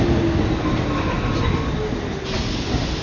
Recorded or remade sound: recorded